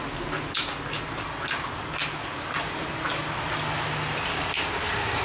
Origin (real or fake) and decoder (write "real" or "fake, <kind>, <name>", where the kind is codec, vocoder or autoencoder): real